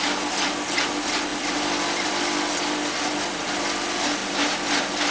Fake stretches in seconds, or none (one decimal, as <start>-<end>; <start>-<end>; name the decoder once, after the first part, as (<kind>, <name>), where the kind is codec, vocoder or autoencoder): 1.3-2.2 (vocoder, BigVGAN v2); 4.2-5.1